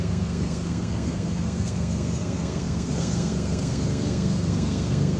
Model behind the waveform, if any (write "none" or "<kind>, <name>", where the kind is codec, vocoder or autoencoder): codec, SNAC